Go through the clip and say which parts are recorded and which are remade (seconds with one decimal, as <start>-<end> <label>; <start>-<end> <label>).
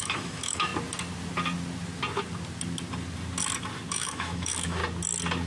0.0-0.7 remade; 0.7-3.9 recorded; 3.9-4.8 remade; 4.8-5.5 recorded